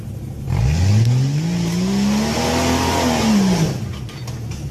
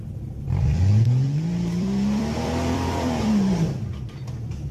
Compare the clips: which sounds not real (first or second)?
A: second